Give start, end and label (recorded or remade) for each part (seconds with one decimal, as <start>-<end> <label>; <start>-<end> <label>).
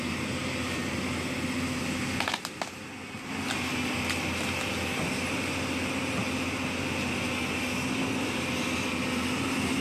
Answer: 0.0-9.8 recorded